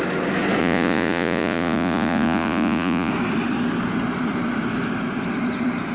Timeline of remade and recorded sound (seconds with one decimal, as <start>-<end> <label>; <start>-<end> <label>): 0.0-0.6 recorded; 0.6-3.1 remade; 3.1-5.9 recorded